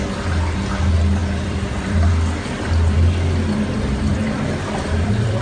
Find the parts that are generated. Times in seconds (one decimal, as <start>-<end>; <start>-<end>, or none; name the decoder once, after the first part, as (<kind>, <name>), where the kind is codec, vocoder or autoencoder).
1.2-2.1 (vocoder, BigVGAN v2); 4.1-5.4